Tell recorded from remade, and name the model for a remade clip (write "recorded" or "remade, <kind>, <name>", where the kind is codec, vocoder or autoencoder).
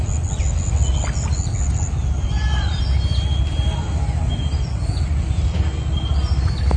recorded